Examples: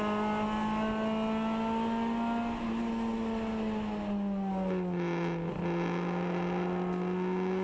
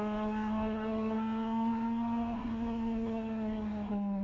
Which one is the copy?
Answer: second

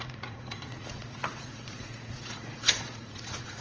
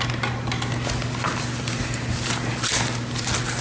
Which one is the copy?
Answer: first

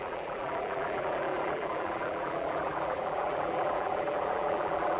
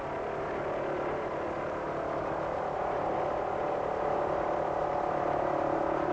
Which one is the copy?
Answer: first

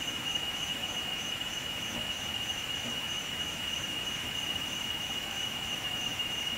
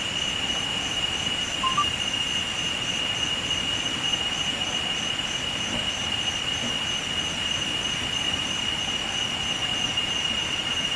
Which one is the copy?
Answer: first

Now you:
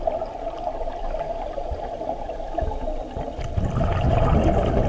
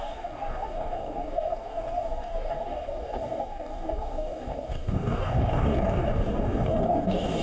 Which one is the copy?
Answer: second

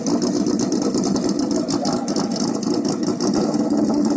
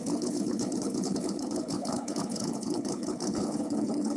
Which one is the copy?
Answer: second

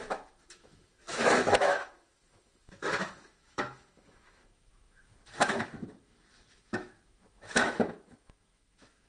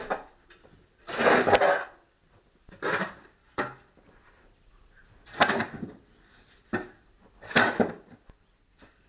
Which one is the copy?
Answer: first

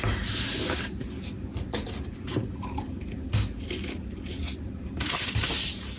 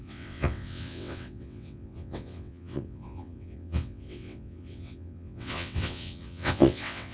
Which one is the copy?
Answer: second